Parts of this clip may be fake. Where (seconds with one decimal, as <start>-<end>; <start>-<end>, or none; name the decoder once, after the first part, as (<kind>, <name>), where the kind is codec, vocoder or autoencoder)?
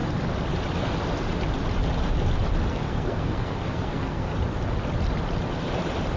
2.7-4.3 (codec, SNAC)